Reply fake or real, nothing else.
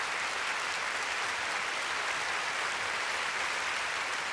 real